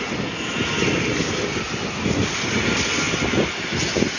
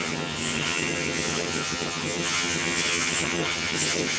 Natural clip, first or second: first